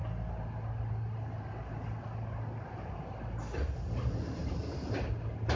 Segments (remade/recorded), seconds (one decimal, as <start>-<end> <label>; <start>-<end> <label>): 0.0-5.6 recorded